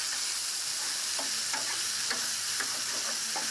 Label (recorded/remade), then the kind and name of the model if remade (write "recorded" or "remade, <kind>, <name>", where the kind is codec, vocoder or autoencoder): recorded